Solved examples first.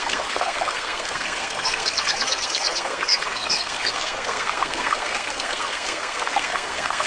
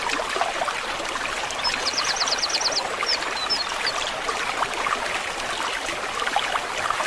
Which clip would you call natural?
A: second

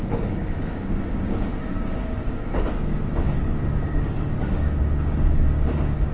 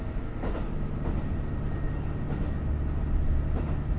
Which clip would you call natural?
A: second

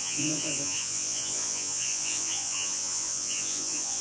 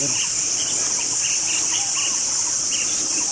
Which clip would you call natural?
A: second